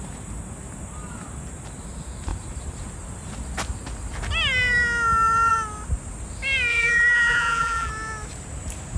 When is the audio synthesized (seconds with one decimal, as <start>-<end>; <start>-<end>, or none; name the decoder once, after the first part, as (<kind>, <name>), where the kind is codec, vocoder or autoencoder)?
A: 6.7-7.9 (vocoder, BigVGAN v2)